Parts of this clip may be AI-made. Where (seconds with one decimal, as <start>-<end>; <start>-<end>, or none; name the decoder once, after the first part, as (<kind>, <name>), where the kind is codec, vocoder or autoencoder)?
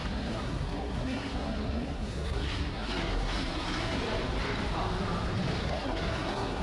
0.0-4.0 (codec, SNAC); 5.6-6.6